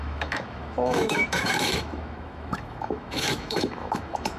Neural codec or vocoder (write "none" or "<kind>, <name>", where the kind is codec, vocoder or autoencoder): autoencoder, DAC-VAE